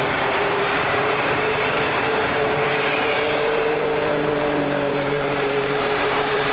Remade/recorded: remade